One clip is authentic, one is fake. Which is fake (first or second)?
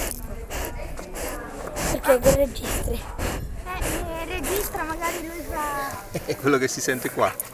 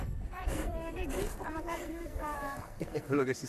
second